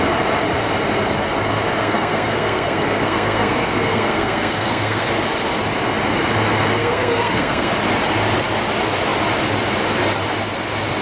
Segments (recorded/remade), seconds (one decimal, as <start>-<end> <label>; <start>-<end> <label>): 0.0-1.8 recorded; 1.8-5.1 remade; 5.1-6.8 recorded; 6.8-7.7 remade; 7.7-11.0 recorded